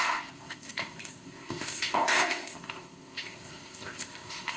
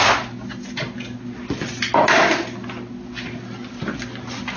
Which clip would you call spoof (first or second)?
first